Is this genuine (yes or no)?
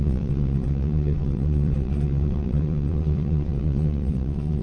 no